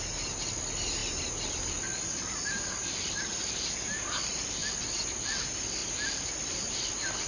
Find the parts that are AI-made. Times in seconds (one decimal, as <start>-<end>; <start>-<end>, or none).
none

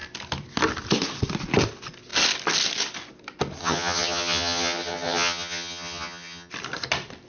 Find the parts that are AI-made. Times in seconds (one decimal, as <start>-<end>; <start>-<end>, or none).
3.6-6.5

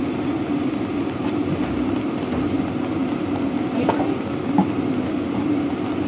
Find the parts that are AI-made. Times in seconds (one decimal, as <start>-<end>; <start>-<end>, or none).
none

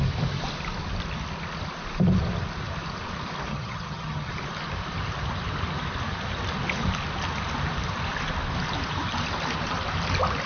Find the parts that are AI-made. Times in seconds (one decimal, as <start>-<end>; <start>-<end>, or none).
3.5-4.3